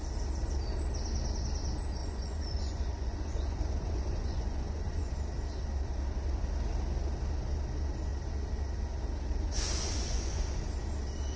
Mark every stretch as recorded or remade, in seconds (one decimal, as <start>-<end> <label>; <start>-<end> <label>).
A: 0.0-2.0 recorded; 2.0-5.1 remade; 5.1-9.4 recorded; 9.4-10.6 remade; 10.6-11.4 recorded